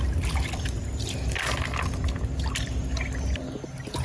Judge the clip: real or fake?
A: real